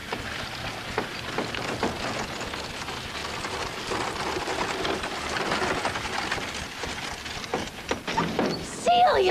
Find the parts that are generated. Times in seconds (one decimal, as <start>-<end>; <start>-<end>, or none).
none